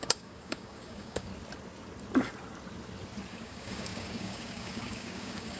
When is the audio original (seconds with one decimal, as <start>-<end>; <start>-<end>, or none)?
1.3-3.3